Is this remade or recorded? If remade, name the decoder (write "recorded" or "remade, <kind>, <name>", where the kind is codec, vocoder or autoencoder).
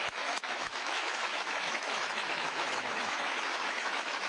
remade, autoencoder, DAC-VAE